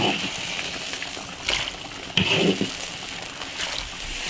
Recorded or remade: recorded